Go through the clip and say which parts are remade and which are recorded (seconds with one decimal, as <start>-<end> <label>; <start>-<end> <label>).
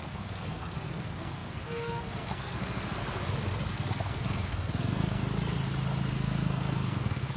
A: 0.0-3.0 remade; 3.0-3.7 recorded; 3.7-5.2 remade; 5.2-6.1 recorded; 6.1-7.4 remade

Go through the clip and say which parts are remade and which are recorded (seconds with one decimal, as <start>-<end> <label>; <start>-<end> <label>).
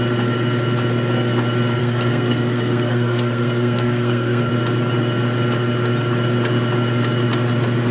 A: 0.0-1.8 recorded; 1.8-4.5 remade; 4.5-7.9 recorded